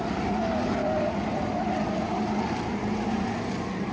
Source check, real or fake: real